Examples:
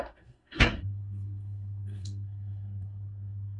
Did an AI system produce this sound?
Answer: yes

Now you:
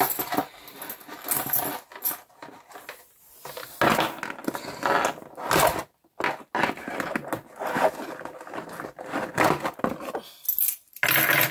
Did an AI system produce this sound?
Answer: no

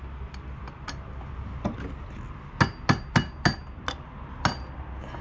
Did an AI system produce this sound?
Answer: no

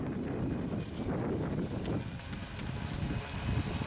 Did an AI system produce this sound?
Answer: no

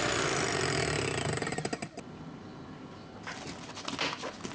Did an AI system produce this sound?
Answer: no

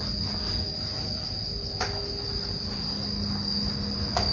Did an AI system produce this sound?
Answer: no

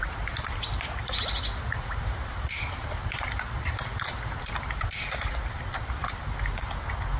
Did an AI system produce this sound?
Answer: no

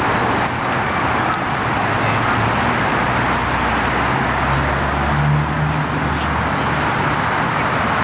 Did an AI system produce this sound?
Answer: no